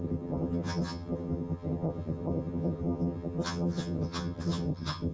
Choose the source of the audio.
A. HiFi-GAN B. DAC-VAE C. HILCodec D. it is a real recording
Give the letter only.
A